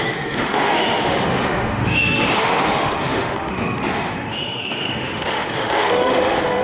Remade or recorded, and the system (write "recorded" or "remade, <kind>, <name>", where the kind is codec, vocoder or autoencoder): remade, autoencoder, DAC-VAE